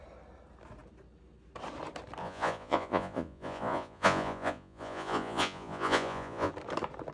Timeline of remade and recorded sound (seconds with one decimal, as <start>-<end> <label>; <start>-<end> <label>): 0.0-2.2 recorded; 2.2-6.5 remade; 6.5-7.1 recorded